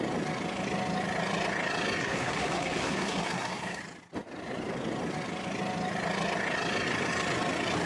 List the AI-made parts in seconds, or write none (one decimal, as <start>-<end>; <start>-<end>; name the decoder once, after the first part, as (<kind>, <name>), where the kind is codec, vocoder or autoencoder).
2.0-3.8 (codec, SNAC)